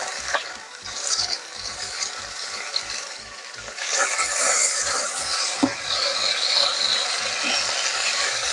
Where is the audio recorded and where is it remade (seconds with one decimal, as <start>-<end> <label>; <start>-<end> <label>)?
0.0-6.9 remade; 6.9-7.9 recorded; 7.9-8.5 remade